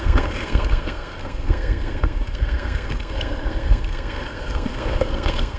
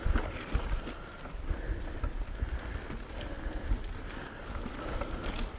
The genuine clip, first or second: second